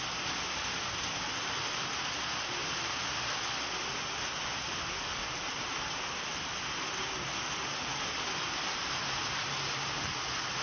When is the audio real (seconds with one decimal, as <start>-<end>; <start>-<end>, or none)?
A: 0.0-2.6; 3.2-5.2; 6.5-10.6